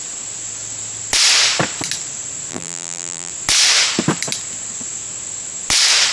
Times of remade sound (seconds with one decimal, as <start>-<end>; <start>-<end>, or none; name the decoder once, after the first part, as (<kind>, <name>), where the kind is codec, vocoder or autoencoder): 2.5-3.3 (vocoder, BigVGAN v2)